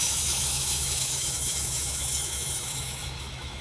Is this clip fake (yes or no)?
yes